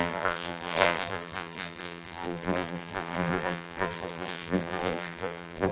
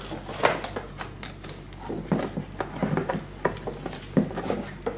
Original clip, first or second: second